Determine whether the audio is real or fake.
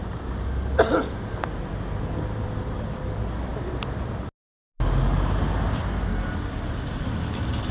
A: real